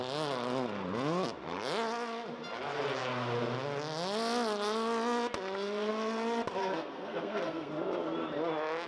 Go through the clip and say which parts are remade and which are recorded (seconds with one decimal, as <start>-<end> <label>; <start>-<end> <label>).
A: 0.0-6.6 recorded; 6.6-7.7 remade; 7.7-8.9 recorded